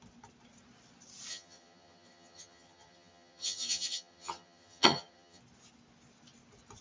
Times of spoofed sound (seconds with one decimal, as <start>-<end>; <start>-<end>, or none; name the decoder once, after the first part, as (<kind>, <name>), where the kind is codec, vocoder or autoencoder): 1.3-5.4 (vocoder, HiFi-GAN)